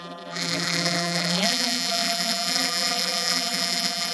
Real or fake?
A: fake